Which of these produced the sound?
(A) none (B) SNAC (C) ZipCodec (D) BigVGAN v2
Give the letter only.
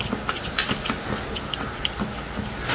A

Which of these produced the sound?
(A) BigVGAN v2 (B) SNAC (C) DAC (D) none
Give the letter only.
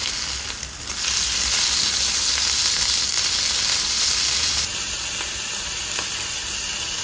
D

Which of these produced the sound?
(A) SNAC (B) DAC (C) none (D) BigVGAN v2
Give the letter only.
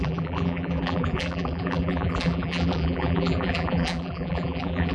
D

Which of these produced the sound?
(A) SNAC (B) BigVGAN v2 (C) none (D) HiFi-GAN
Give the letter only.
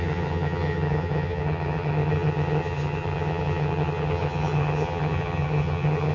D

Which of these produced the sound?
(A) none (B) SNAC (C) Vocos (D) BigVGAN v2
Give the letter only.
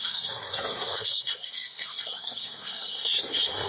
B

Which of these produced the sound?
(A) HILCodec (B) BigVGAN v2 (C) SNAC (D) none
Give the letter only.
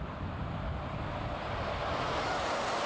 D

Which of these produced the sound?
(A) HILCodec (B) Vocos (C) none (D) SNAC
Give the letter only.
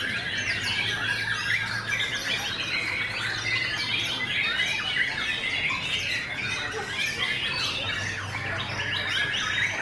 C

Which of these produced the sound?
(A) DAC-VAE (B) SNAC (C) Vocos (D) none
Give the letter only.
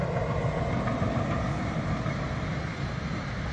D